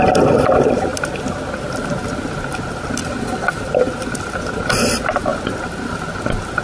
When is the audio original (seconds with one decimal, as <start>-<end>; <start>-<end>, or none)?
0.0-3.0; 3.6-6.6